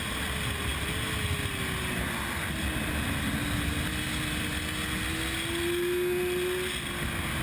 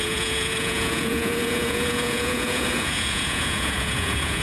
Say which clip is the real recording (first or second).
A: first